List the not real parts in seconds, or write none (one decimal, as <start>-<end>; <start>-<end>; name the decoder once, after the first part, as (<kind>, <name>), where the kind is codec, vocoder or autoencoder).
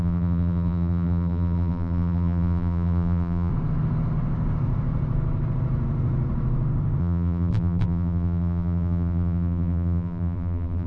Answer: 0.0-3.5 (vocoder, BigVGAN v2); 7.0-10.9